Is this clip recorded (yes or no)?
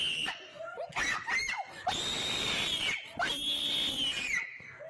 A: yes